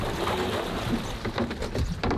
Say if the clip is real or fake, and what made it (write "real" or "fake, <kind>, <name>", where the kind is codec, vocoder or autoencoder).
real